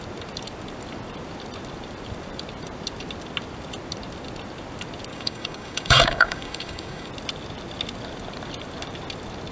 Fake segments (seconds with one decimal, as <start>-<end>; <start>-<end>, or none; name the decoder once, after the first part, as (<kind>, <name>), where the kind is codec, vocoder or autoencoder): 5.1-7.1 (codec, DAC)